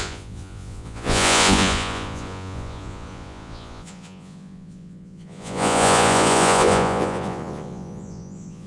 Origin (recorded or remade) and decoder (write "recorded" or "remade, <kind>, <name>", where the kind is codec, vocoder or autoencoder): remade, vocoder, Vocos